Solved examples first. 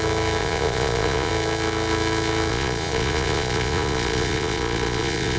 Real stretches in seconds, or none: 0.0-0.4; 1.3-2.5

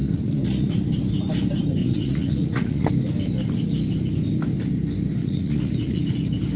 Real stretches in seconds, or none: 0.7-1.8; 2.9-5.2; 6.0-6.6